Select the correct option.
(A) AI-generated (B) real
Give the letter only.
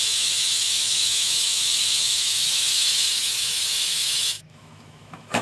A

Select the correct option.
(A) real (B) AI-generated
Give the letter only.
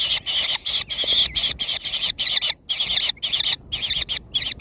A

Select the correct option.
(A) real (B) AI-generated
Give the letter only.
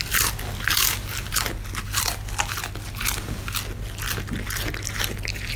A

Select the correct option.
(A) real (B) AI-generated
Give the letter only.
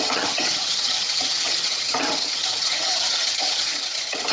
B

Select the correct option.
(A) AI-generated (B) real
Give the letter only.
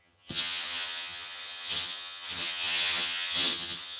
A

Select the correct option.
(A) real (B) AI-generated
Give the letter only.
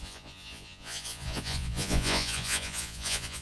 B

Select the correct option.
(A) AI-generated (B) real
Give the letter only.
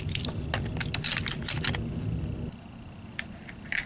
B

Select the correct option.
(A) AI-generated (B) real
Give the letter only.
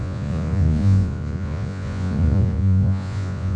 A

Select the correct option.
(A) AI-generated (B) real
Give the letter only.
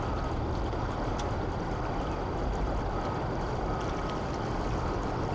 B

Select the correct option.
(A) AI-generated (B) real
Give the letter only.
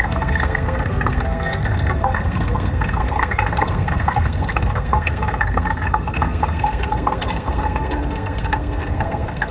A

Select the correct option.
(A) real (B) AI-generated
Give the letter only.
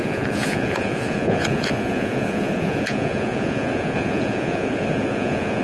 B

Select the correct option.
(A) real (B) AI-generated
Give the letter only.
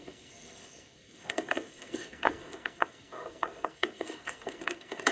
B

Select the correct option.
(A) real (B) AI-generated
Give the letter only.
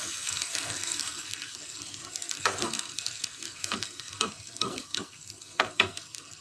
B